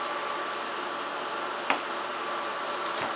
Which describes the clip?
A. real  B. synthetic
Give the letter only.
A